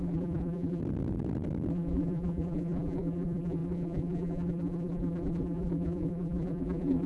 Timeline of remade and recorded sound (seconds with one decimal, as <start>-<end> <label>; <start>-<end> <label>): 0.0-0.8 remade; 0.8-1.7 recorded; 1.7-7.1 remade